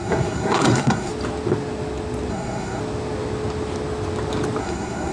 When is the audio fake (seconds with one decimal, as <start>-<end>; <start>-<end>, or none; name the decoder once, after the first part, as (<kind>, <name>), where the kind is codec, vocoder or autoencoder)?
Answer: 0.0-1.1 (codec, SNAC); 2.3-2.8; 4.6-5.1